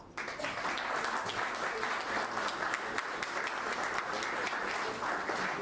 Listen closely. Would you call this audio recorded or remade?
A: recorded